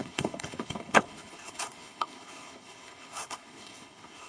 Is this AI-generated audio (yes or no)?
yes